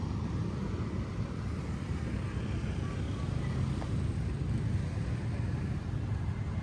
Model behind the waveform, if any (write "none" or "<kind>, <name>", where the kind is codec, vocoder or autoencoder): none